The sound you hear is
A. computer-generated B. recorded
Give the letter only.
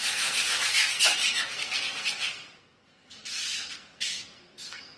A